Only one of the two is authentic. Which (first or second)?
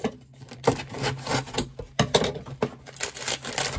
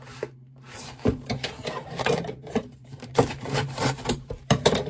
first